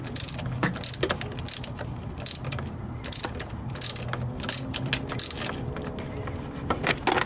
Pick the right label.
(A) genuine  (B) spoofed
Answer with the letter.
A